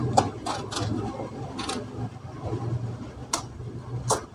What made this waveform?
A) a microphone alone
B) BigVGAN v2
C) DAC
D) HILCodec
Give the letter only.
A